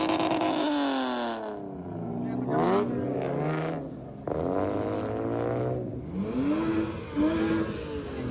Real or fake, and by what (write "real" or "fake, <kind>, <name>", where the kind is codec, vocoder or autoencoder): real